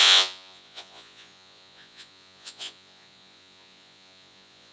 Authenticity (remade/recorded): remade